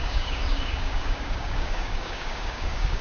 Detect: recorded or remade remade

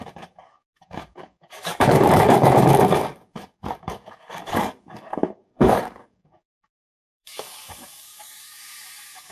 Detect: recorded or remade remade